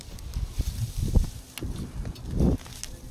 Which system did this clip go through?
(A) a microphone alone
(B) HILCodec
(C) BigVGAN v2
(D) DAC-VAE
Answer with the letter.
A